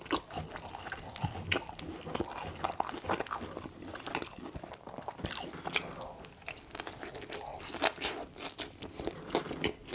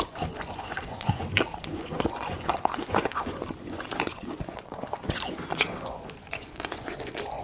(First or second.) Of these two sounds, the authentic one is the first